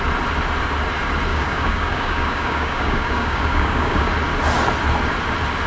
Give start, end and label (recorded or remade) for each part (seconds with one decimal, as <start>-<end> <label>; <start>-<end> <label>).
0.0-1.3 recorded; 1.3-4.1 remade; 4.1-5.7 recorded

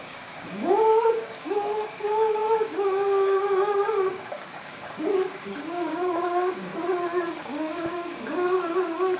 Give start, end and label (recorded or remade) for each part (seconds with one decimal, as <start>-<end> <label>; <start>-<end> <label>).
0.0-6.7 remade; 6.7-7.4 recorded; 7.4-9.2 remade

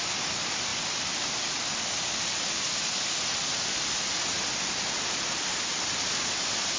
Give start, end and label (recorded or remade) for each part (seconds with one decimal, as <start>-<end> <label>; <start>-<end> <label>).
0.0-6.8 recorded

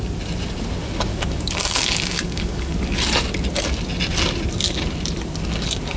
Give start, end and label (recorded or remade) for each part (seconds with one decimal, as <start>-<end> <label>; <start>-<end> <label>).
0.0-1.1 recorded; 1.1-2.8 remade; 2.8-6.0 recorded

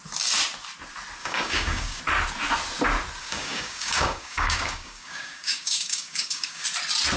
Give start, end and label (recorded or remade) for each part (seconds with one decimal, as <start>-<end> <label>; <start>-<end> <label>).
0.0-1.2 recorded; 1.2-2.0 remade; 2.0-3.2 recorded; 3.2-6.6 remade; 6.6-7.2 recorded

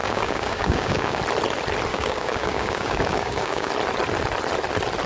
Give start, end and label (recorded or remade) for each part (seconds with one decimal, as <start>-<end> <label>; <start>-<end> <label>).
0.0-1.2 remade; 1.2-1.9 recorded; 1.9-3.7 remade; 3.7-5.1 recorded

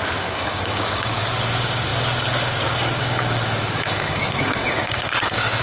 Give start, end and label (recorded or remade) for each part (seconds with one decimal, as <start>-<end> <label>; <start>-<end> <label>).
0.0-5.6 remade